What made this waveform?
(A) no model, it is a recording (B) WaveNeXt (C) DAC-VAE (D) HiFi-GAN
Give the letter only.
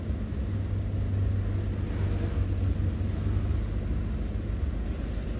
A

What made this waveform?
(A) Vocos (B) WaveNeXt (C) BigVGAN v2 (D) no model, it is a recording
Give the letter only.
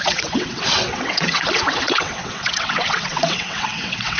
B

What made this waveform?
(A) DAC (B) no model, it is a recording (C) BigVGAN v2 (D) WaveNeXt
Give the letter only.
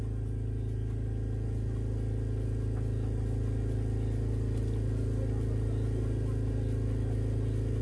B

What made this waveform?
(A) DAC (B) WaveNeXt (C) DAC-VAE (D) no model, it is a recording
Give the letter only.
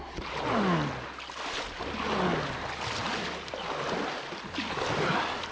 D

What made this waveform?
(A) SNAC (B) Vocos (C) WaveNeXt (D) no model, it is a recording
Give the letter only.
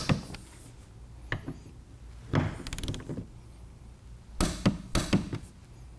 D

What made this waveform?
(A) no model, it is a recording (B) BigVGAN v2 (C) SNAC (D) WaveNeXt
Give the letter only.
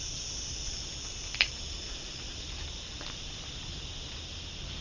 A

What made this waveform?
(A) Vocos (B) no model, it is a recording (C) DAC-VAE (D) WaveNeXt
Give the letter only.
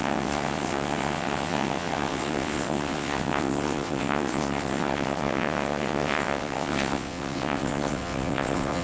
D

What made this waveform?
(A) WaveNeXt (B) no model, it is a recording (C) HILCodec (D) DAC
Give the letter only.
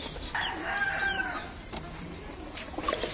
B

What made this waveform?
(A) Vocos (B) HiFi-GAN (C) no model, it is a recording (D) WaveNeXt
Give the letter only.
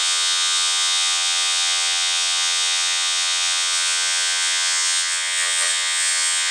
D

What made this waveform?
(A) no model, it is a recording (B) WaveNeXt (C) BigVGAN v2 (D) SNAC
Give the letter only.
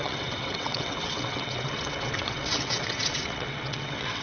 B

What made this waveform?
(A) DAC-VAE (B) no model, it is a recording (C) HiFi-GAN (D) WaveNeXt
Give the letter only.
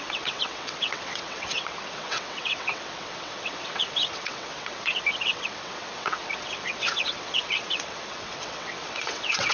D